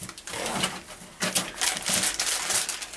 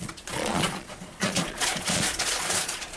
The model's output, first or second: second